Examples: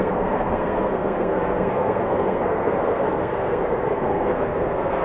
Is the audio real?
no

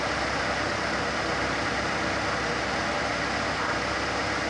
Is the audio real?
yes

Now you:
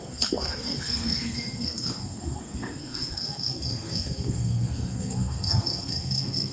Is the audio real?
no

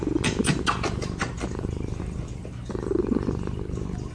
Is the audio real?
yes